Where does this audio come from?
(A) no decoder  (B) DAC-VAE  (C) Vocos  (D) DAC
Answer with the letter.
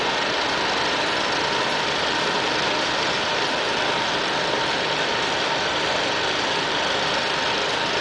A